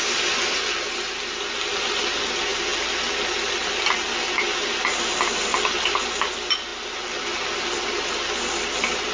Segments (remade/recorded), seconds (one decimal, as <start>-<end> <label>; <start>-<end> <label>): 0.0-9.1 recorded